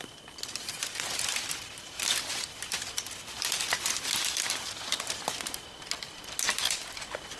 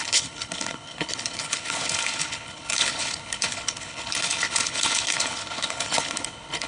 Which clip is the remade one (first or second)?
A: second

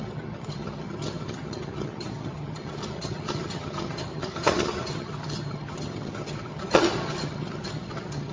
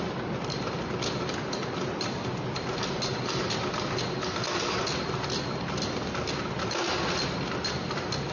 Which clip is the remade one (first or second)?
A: first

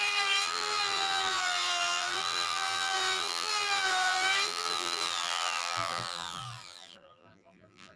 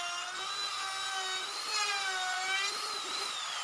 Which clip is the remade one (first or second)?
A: first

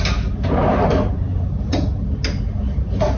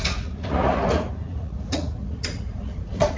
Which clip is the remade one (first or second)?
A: second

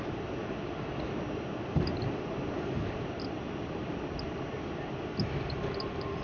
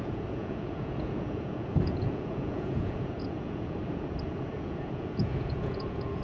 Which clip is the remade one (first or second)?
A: second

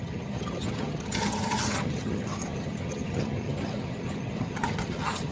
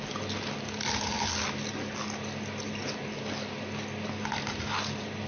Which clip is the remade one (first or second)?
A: first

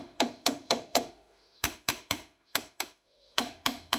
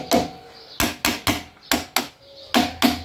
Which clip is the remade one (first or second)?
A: first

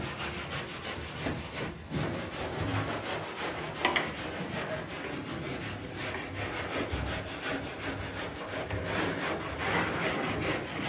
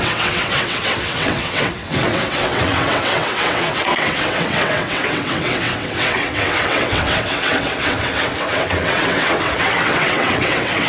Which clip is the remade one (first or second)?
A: second